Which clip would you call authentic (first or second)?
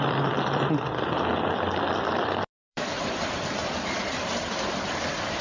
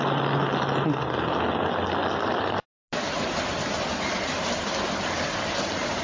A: second